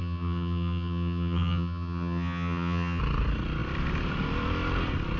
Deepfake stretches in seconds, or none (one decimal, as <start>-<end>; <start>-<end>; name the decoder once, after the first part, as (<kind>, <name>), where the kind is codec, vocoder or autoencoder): 0.0-3.0 (vocoder, HiFi-GAN)